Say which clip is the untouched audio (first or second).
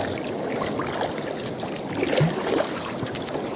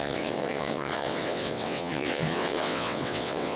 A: first